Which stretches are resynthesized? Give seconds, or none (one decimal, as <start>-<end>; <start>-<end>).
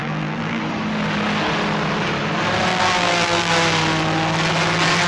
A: 0.0-0.6; 2.7-3.5